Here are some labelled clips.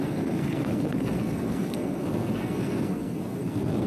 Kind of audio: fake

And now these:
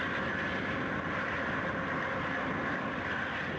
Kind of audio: real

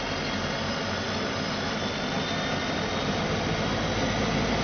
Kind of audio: real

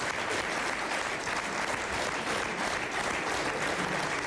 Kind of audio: real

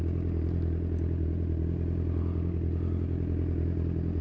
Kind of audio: real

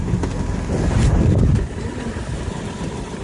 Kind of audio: real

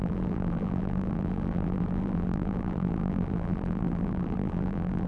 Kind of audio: fake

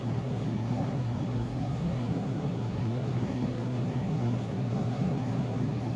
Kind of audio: fake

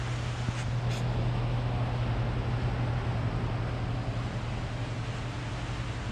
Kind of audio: real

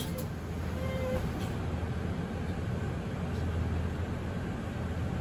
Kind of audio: real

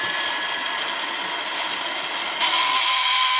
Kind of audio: real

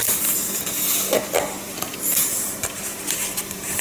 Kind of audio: fake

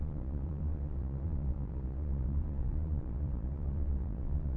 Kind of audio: fake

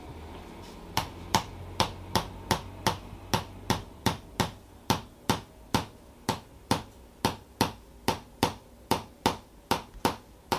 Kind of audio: real